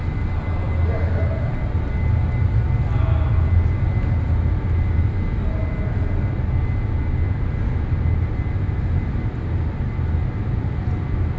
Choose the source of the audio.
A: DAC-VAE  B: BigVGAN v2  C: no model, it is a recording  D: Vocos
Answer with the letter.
C